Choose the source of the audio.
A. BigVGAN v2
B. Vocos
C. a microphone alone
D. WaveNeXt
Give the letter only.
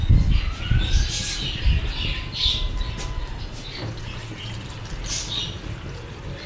C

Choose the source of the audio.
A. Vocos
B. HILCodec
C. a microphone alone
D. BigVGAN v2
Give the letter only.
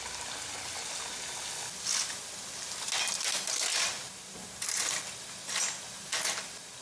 C